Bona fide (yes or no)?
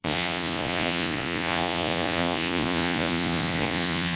no